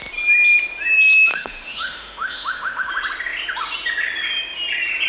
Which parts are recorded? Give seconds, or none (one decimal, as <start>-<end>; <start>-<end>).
0.0-1.3; 2.9-5.1